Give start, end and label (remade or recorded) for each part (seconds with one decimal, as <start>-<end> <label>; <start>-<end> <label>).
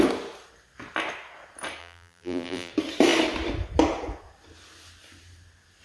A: 0.0-1.8 recorded; 1.8-2.7 remade; 2.7-5.8 recorded